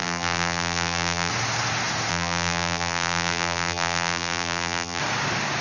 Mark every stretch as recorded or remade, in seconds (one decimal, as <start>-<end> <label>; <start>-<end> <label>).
0.0-1.3 remade; 1.3-2.1 recorded; 2.1-5.0 remade; 5.0-5.6 recorded